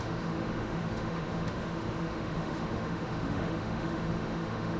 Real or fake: fake